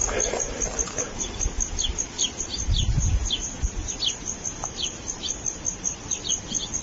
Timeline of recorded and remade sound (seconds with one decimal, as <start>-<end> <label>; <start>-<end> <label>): 0.0-3.3 recorded; 3.3-6.8 remade